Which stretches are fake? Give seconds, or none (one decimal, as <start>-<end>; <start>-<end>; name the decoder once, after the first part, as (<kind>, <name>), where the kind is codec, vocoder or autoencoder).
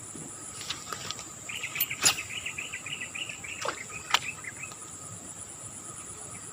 0.4-2.7 (vocoder, BigVGAN v2)